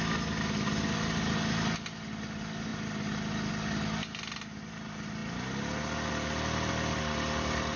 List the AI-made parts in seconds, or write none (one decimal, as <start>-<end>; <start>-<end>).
none